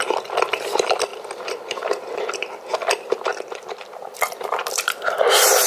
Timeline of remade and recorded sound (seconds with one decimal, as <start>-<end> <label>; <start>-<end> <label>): 0.0-3.3 remade; 3.3-3.9 recorded; 3.9-5.7 remade